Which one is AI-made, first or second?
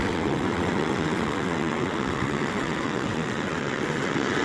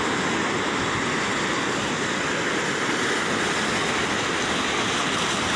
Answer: first